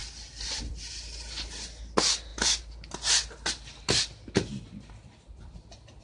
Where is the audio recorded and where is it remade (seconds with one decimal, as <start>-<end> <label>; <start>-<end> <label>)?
0.0-6.0 recorded